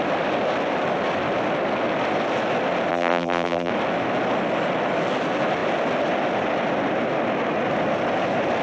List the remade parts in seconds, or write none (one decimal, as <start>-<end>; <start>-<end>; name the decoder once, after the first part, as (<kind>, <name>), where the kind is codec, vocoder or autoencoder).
2.9-3.7 (vocoder, BigVGAN v2)